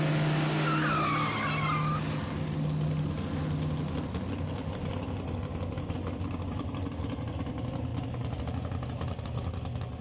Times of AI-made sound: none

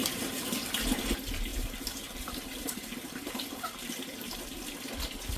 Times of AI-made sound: 0.0-0.7 (vocoder, BigVGAN v2); 1.5-4.7

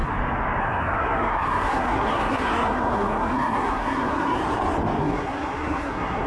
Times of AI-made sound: 0.6-4.4 (codec, SNAC); 5.0-6.3

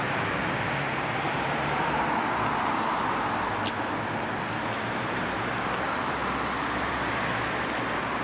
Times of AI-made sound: none

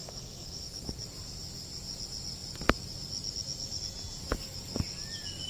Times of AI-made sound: 0.0-0.6 (codec, DAC)

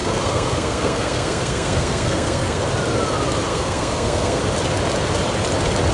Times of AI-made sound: 0.0-2.6 (codec, SNAC); 3.5-4.4

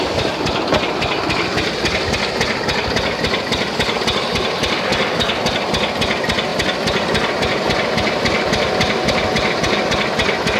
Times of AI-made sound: 4.9-5.4 (codec, DAC)